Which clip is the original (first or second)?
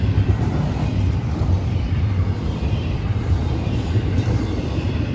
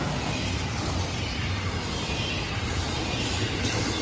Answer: second